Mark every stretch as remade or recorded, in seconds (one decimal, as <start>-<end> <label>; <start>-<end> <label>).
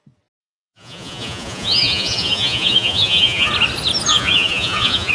0.0-0.4 recorded; 0.4-3.5 remade; 3.5-4.1 recorded; 4.1-5.1 remade